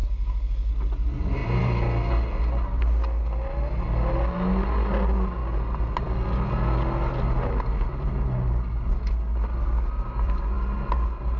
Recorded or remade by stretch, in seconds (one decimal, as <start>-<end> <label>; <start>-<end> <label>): 0.0-0.7 remade; 0.7-11.4 recorded